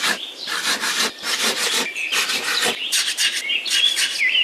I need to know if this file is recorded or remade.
remade